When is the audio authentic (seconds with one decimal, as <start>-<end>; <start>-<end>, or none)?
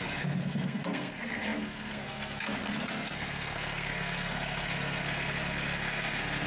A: none